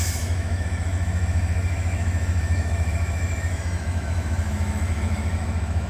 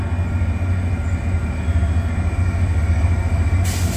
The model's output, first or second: first